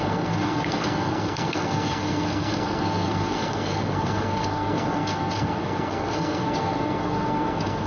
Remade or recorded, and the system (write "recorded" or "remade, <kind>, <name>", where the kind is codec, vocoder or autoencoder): remade, codec, SNAC